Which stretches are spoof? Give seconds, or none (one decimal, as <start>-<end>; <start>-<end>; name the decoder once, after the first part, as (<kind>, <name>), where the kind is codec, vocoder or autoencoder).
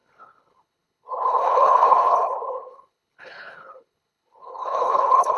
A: 0.0-5.4 (codec, HILCodec)